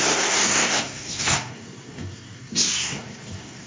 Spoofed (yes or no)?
yes